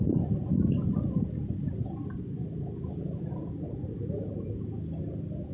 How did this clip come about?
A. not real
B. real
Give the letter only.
B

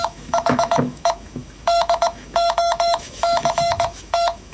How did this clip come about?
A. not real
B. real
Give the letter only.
A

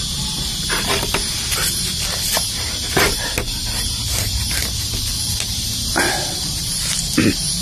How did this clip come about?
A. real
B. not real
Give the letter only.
B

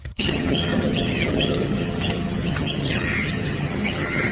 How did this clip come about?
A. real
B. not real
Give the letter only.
B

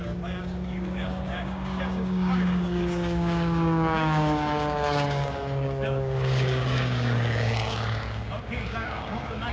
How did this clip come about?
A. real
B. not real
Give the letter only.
B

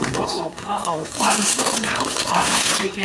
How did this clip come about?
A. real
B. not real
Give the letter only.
B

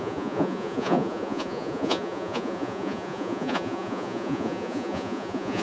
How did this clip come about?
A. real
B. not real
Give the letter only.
B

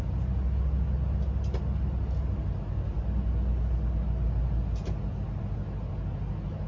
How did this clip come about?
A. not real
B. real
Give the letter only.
B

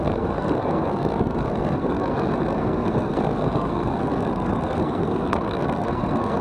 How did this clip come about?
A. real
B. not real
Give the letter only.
B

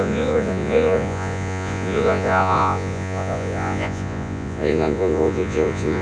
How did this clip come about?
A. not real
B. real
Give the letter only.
A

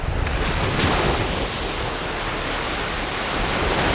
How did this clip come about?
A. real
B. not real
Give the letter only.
A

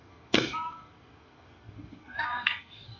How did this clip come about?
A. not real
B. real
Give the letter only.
A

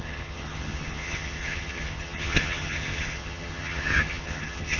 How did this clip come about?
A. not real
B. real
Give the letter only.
A